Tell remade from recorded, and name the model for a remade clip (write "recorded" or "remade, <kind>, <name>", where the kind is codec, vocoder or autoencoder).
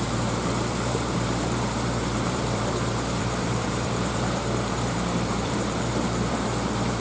remade, vocoder, BigVGAN v2